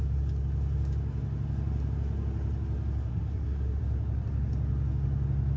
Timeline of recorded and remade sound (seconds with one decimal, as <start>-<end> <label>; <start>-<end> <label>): 0.0-3.1 recorded; 3.1-3.8 remade; 3.8-5.6 recorded